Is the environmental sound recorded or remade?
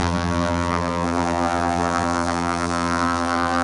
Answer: remade